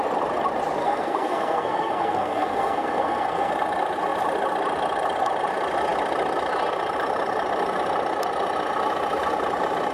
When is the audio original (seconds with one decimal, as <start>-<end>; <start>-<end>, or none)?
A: 0.0-0.8; 3.5-9.9